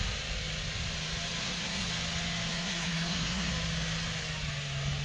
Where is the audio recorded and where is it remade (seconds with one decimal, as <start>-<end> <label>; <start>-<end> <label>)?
0.0-1.4 recorded; 1.4-1.9 remade; 1.9-2.5 recorded; 2.5-3.5 remade; 3.5-5.0 recorded